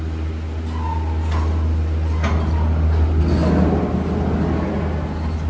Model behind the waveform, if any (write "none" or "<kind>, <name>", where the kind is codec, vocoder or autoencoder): none